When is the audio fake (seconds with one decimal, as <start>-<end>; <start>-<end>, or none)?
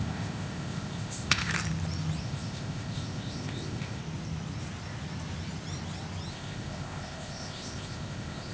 0.0-1.5; 2.2-4.0; 6.3-8.5